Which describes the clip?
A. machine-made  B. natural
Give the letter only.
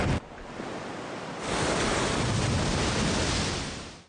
B